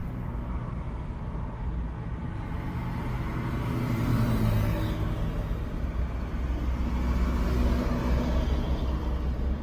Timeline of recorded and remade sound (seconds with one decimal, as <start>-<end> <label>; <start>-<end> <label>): 0.0-9.6 recorded